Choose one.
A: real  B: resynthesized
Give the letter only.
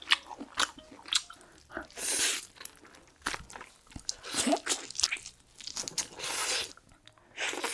A